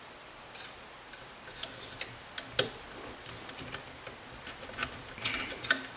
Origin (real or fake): fake